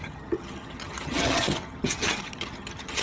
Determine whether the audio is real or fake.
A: fake